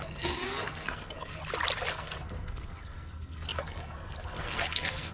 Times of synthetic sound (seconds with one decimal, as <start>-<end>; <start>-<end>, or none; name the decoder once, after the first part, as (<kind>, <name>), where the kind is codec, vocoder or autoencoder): 0.0-1.4 (codec, SNAC); 1.9-5.1